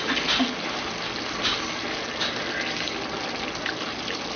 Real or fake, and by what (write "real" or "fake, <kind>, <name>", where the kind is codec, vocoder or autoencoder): real